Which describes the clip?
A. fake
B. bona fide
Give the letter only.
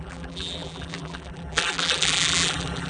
A